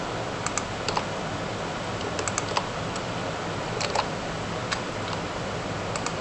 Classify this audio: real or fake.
real